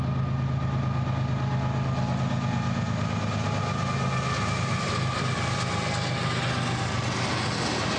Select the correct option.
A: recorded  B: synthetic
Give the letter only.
A